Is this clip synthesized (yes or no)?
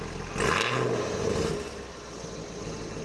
no